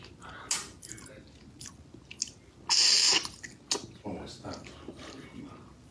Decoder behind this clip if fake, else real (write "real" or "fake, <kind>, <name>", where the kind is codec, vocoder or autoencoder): real